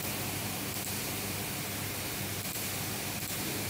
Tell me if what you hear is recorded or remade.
recorded